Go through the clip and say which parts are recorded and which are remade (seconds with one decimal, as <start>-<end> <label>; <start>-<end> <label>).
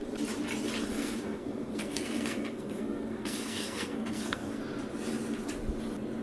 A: 0.0-0.9 recorded; 0.9-4.6 remade; 4.6-6.2 recorded